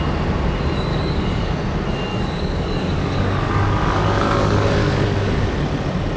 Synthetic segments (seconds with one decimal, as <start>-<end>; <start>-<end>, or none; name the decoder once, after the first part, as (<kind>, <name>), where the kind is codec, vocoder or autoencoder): 0.9-1.5 (codec, DAC); 2.1-5.5